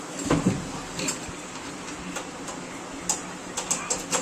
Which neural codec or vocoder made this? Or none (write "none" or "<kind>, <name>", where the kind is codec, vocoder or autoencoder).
none